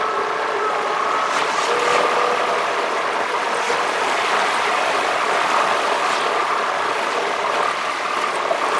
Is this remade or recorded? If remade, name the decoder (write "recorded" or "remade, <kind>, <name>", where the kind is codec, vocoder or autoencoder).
recorded